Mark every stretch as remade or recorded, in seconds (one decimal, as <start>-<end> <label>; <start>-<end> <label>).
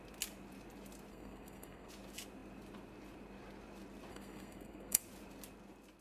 0.0-1.1 recorded; 1.1-1.9 remade; 1.9-4.1 recorded; 4.1-5.0 remade; 5.0-6.0 recorded